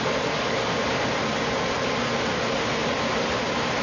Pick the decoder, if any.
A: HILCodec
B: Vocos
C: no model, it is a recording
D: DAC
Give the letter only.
C